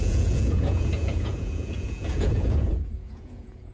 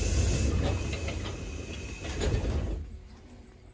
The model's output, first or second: first